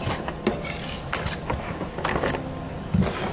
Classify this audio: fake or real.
real